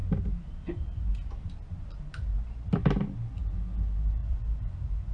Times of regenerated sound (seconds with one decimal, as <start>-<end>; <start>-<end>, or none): 4.2-5.1